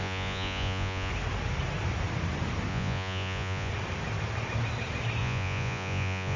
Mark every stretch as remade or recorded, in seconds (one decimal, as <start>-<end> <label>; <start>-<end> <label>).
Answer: 0.0-1.1 remade; 1.1-2.7 recorded; 2.7-3.7 remade; 3.7-5.2 recorded; 5.2-6.4 remade

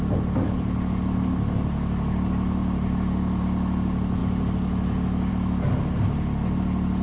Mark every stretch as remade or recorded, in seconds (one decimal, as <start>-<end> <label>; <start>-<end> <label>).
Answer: 0.0-7.0 recorded